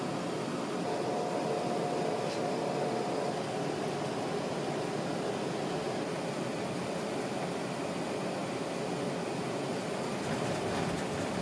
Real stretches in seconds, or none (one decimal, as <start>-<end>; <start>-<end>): 0.0-11.4